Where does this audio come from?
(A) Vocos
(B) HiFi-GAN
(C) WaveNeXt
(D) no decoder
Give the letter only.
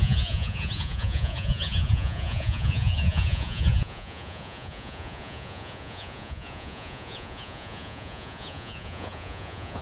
A